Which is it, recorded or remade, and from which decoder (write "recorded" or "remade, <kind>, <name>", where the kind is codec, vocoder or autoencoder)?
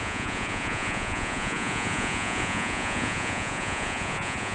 remade, vocoder, Vocos